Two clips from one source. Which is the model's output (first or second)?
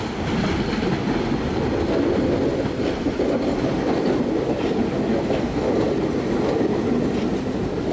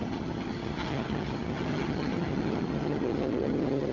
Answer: second